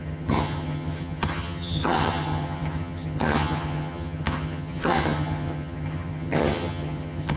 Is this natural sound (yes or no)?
no